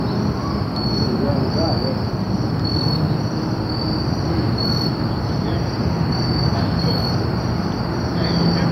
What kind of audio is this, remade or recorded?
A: recorded